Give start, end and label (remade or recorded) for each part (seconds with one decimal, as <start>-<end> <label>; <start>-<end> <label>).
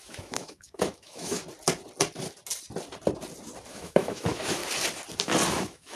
0.0-1.4 remade; 1.4-3.7 recorded; 3.7-4.6 remade; 4.6-5.5 recorded; 5.5-6.0 remade